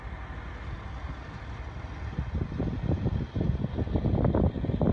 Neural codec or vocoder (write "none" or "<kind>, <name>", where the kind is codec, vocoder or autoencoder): none